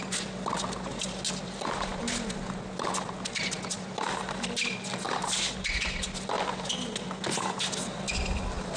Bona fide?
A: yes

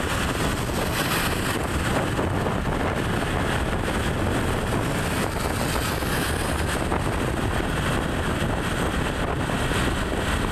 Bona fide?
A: yes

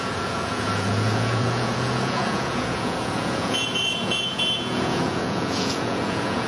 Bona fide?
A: no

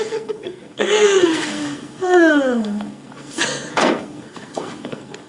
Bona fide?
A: no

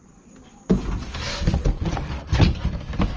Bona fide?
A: yes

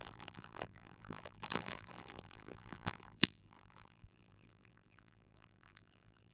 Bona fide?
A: no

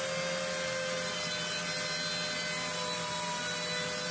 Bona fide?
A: yes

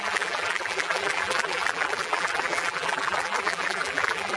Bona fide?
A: no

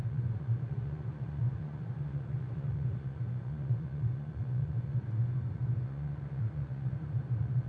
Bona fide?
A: no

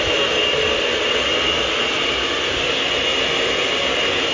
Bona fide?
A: yes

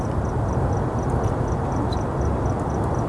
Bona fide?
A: yes